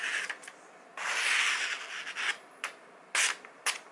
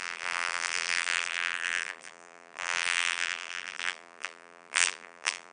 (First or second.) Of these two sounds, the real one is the first